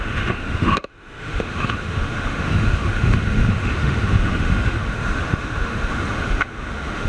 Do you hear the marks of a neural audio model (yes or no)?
yes